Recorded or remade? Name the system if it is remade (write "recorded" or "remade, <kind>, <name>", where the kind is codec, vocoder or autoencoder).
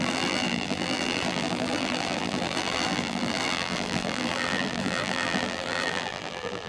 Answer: remade, vocoder, BigVGAN v2